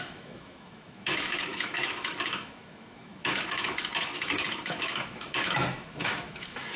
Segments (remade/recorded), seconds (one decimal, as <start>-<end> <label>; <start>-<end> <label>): 0.0-6.8 remade